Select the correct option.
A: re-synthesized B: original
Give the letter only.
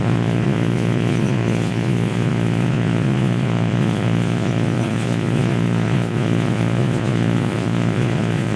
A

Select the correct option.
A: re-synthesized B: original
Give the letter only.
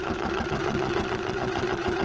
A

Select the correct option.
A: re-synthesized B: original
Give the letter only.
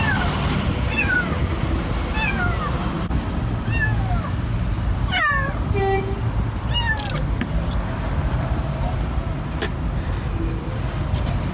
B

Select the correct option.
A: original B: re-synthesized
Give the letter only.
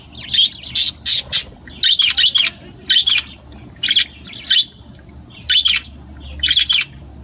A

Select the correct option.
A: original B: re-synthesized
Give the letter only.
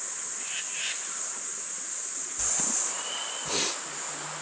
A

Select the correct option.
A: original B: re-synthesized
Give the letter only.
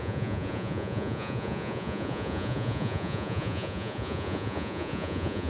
B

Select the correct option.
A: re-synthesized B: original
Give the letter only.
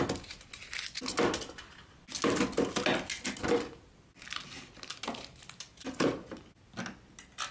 B